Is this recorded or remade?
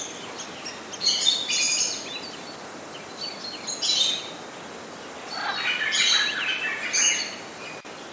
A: recorded